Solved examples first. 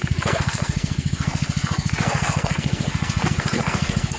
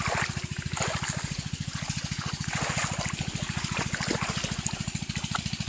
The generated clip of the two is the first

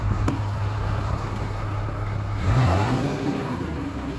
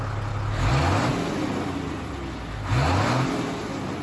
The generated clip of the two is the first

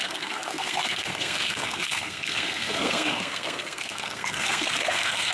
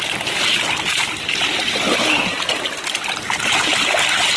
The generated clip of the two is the first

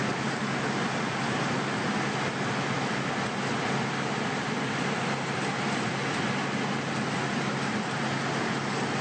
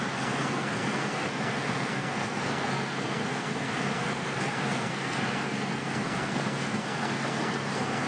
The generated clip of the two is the second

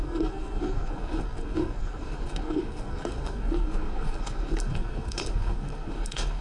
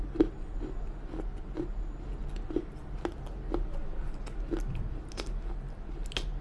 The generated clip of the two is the first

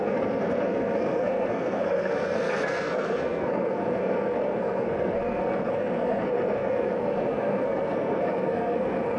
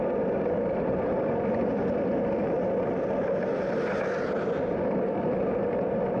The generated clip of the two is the first